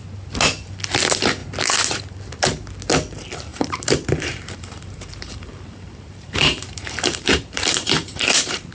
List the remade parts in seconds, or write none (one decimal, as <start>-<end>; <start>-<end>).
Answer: 3.5-8.7